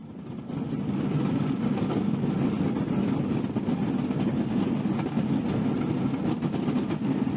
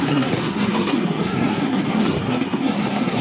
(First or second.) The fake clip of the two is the second